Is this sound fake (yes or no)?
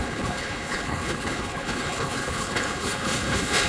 yes